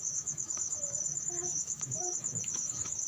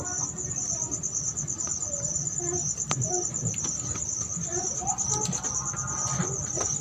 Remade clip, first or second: first